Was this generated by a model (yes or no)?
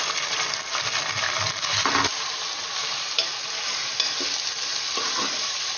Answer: no